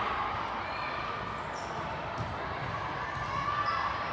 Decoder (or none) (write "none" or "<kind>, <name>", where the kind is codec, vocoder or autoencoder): none